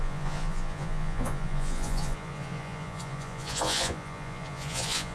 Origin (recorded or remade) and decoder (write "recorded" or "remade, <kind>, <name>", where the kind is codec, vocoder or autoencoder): remade, vocoder, Vocos